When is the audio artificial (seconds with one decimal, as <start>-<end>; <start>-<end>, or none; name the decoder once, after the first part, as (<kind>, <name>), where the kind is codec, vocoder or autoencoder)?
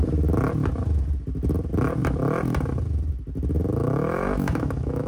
3.8-5.1 (autoencoder, DAC-VAE)